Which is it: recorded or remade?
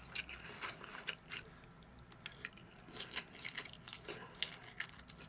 recorded